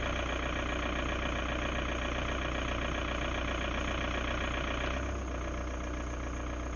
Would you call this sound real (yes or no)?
yes